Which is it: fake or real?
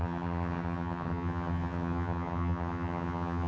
fake